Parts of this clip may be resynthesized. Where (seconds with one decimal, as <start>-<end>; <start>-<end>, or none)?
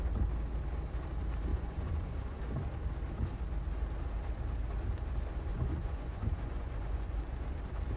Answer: 1.5-2.4; 5.5-7.5